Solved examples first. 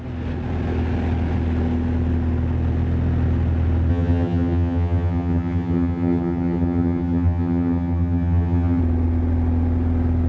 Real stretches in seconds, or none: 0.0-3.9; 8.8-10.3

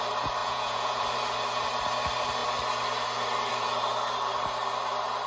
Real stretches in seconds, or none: 0.0-0.4; 1.0-5.3

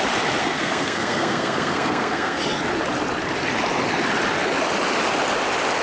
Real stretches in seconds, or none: 0.0-0.4; 2.4-5.8

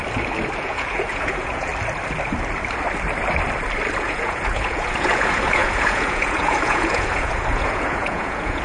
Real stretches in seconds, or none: 0.0-0.6; 1.7-4.0